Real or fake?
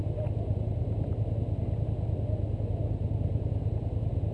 real